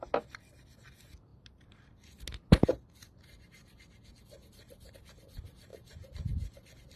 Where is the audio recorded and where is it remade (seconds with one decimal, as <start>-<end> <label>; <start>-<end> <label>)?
0.0-7.0 recorded